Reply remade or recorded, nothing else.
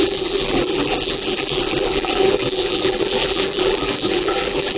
remade